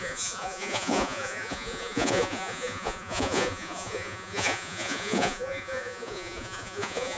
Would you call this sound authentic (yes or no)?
no